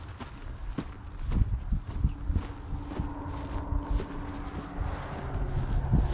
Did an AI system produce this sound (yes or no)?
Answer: no